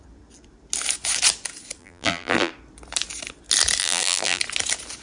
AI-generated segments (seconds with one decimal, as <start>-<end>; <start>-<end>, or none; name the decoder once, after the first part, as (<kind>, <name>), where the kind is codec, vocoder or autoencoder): 1.8-2.5 (vocoder, BigVGAN v2); 3.8-4.4